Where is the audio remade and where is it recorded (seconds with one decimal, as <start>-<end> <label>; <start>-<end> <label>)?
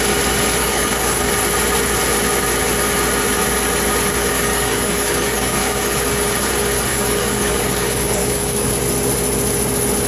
0.0-0.6 recorded; 0.6-1.3 remade; 1.3-4.2 recorded; 4.2-6.0 remade; 6.0-6.9 recorded; 6.9-8.7 remade; 8.7-10.1 recorded